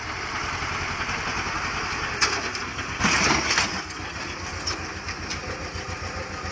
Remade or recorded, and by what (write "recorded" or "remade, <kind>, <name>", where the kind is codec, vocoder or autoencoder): recorded